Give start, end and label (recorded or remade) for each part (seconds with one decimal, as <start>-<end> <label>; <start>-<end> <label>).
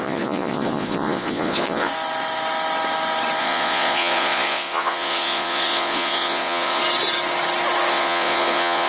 0.0-1.9 remade; 1.9-3.4 recorded; 3.4-6.8 remade; 6.8-7.9 recorded; 7.9-8.9 remade